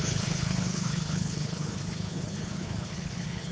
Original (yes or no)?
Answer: no